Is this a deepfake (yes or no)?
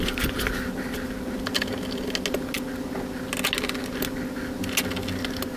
no